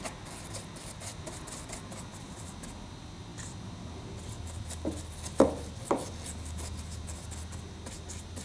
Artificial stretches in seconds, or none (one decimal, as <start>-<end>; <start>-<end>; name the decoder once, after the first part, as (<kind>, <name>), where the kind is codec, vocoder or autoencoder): none